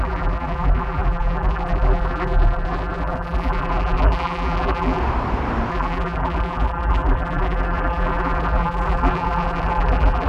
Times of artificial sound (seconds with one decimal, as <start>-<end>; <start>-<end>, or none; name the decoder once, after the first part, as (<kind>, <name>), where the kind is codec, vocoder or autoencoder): 0.0-5.0 (vocoder, BigVGAN v2); 5.7-10.3